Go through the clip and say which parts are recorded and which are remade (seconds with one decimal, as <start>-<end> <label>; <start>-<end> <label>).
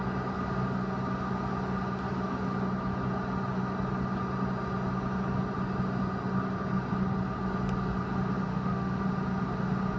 0.0-8.5 recorded; 8.5-9.0 remade; 9.0-10.0 recorded